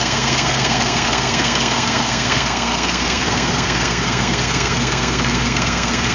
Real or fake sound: fake